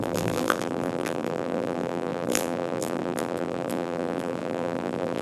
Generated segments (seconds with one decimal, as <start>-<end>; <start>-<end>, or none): 0.0-5.2